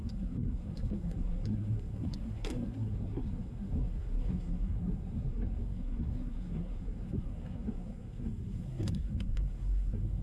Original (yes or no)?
no